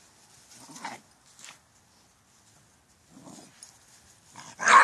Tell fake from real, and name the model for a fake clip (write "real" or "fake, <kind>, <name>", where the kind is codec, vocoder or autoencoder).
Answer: real